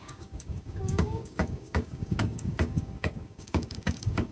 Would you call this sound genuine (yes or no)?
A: no